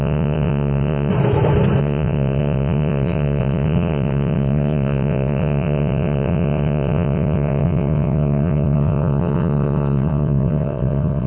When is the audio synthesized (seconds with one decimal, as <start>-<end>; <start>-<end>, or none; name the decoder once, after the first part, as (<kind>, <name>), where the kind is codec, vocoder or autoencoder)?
0.0-1.1 (vocoder, WaveNeXt); 1.8-11.3